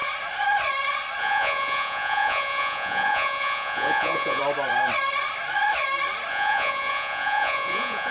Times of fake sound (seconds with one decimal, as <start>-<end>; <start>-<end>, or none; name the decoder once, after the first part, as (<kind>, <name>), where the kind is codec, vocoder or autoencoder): 1.2-4.4 (vocoder, Vocos); 6.3-8.1